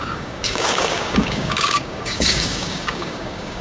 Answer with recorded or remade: remade